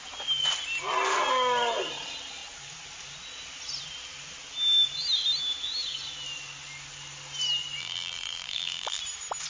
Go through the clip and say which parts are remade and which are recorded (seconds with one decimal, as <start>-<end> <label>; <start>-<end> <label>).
0.0-7.8 recorded; 7.8-9.0 remade; 9.0-9.5 recorded